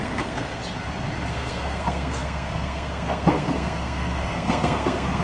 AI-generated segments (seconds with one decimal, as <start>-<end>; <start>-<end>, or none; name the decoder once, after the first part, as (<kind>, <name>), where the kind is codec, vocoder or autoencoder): 0.0-0.6 (codec, SNAC); 1.3-5.2